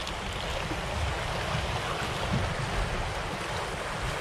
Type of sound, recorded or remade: recorded